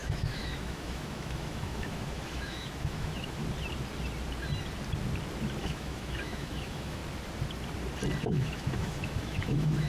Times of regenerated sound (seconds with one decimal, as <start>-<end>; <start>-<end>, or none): 0.0-3.4; 5.6-7.0; 8.2-9.9